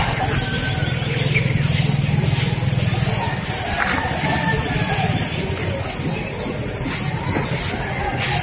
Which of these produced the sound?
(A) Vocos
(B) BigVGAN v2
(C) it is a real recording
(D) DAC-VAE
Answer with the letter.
C